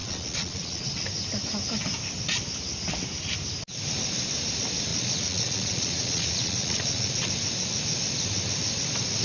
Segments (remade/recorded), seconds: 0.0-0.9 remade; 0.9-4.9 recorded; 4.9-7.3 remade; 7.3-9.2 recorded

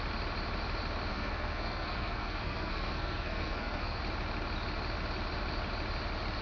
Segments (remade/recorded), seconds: 0.0-1.1 recorded; 1.1-4.0 remade; 4.0-6.4 recorded

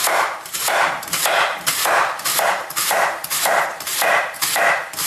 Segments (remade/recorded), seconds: 0.0-1.8 remade; 1.8-2.4 recorded; 2.4-5.1 remade

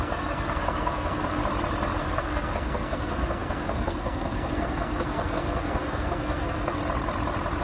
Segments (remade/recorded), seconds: 0.0-1.4 remade; 1.4-2.0 recorded; 2.0-6.8 remade; 6.8-7.6 recorded

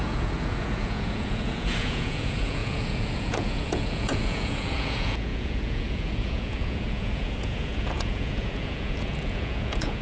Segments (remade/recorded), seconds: 0.0-10.0 remade